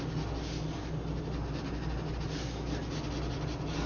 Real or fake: real